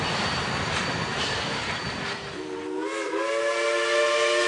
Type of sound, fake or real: real